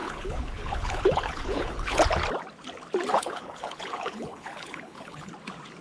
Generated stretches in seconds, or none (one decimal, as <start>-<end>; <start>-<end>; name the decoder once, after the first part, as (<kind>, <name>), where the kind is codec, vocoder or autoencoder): 0.0-2.0 (codec, HILCodec); 3.1-5.3